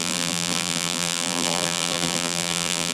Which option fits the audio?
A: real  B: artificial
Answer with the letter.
B